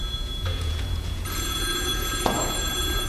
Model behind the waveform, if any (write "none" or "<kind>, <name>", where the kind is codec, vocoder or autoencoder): vocoder, Vocos